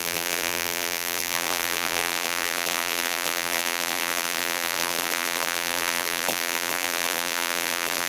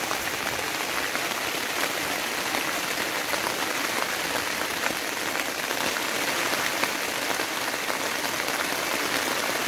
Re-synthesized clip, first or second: first